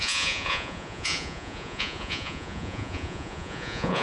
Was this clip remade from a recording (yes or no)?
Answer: yes